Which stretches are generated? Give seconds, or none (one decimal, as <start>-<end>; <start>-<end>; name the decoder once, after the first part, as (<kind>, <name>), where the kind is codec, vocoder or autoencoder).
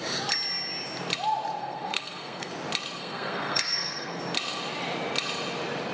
1.6-2.5 (codec, SNAC); 3.0-4.2